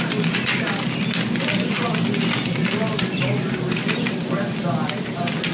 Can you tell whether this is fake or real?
real